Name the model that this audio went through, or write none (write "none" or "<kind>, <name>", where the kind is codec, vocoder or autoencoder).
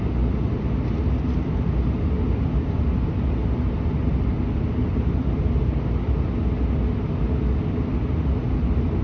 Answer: none